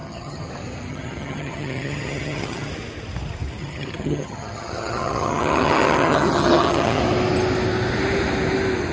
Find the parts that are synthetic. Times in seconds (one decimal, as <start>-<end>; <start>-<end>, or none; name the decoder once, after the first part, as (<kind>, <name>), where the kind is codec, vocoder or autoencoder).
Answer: 0.0-0.5 (vocoder, HiFi-GAN); 0.9-2.7; 3.6-7.0